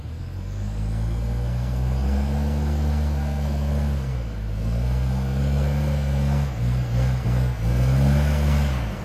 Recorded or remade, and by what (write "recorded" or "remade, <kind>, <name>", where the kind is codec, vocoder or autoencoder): remade, codec, SNAC